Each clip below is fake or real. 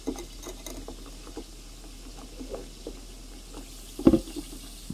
real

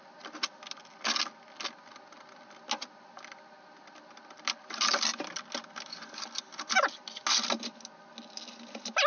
real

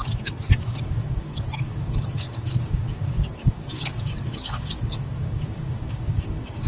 fake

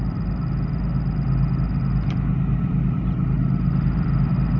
real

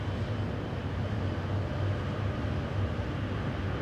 real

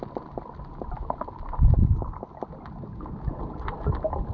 real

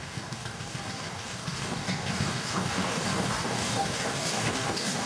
fake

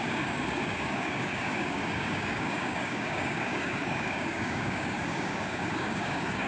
fake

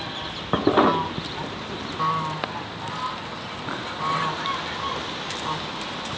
real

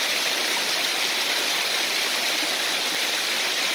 real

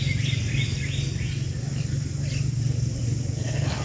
real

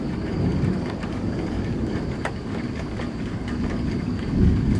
fake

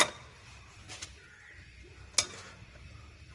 real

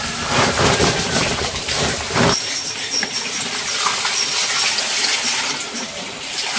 real